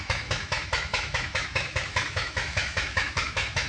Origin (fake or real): fake